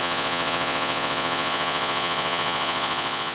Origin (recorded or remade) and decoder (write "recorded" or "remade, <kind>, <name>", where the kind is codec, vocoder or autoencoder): remade, vocoder, Vocos